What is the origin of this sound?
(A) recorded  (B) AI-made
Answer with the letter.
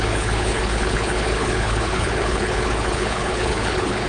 B